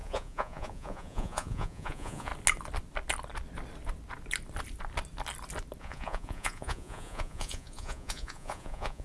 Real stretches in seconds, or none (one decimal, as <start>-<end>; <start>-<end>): 2.3-5.8